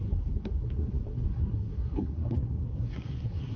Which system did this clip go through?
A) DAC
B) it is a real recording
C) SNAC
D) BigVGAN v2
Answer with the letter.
C